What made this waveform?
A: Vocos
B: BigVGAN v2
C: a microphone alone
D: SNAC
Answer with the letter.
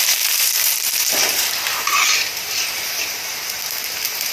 B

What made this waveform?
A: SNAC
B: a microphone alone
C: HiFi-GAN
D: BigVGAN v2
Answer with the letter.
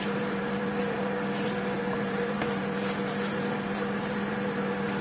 D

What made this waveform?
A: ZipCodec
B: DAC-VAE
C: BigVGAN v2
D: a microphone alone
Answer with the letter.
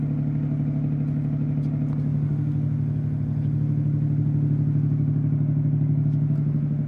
D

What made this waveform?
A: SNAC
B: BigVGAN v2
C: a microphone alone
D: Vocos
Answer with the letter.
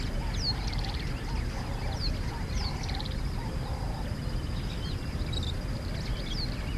C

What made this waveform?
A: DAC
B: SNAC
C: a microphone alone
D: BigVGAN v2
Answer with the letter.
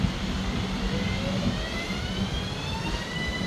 C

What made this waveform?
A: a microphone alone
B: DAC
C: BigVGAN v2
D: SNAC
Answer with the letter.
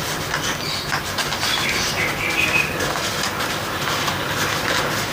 A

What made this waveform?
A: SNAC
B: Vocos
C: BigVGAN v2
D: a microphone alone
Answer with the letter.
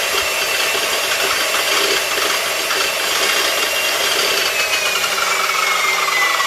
D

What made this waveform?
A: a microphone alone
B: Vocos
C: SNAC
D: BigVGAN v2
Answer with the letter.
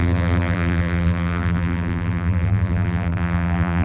D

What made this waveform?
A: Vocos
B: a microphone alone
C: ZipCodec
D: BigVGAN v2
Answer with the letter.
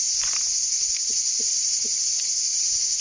B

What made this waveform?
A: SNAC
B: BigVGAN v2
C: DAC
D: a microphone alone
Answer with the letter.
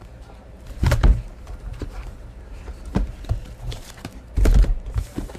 B